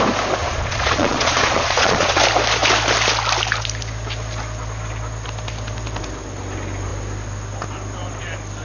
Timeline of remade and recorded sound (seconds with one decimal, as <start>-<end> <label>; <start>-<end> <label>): 0.0-0.4 recorded; 0.4-2.2 remade; 2.2-8.6 recorded